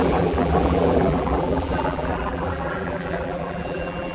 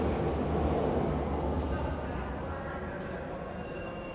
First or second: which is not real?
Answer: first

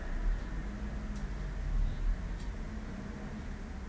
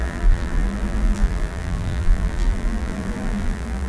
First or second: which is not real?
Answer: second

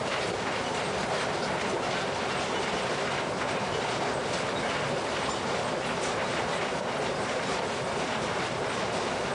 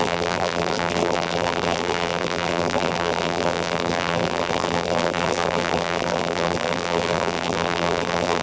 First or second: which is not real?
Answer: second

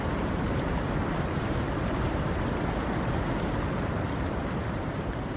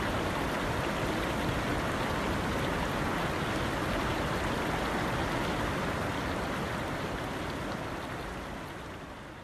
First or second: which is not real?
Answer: first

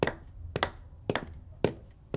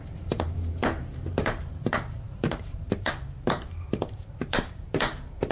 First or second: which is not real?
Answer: second